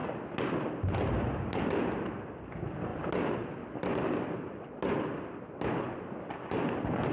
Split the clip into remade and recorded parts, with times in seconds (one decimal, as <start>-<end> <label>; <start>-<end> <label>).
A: 0.0-2.9 recorded; 2.9-4.6 remade; 4.6-7.1 recorded